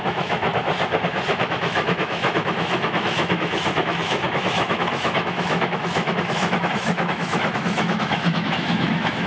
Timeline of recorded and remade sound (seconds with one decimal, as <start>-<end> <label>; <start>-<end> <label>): 0.0-0.5 remade; 0.5-1.3 recorded; 1.3-9.3 remade